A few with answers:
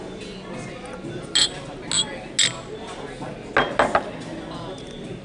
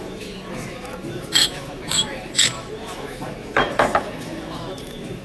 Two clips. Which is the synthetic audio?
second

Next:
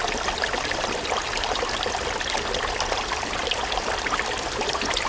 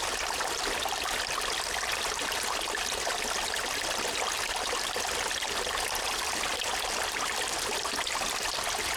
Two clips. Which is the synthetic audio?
first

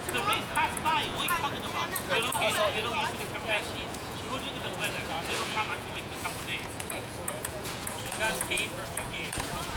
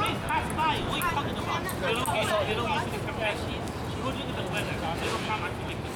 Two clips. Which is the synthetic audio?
first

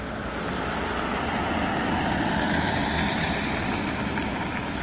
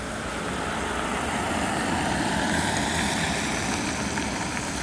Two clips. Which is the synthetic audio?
second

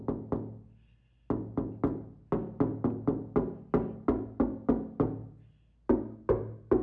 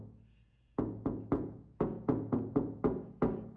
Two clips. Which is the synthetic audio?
second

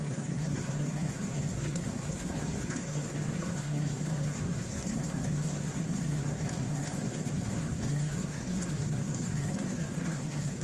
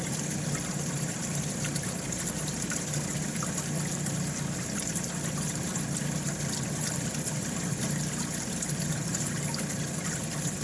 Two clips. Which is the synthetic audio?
first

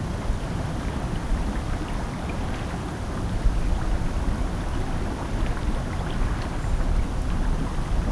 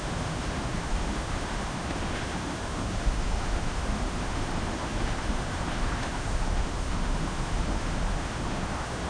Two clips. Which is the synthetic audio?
second